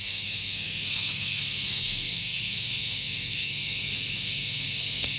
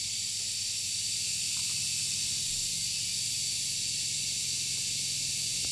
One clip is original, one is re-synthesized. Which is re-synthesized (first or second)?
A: first